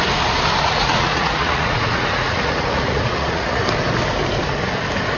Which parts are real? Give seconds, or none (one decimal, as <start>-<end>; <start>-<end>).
0.0-0.6; 3.6-5.2